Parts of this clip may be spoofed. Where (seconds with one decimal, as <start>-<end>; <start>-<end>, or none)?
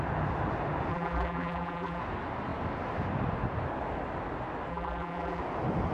0.9-2.0; 4.7-5.4